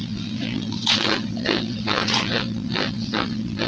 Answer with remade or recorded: remade